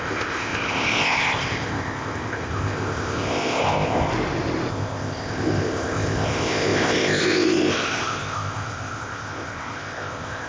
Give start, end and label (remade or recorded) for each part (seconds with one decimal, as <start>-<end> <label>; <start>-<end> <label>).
0.0-4.1 remade; 4.1-4.7 recorded; 4.7-10.5 remade